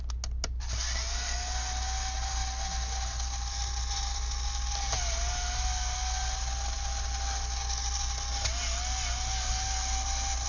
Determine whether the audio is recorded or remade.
recorded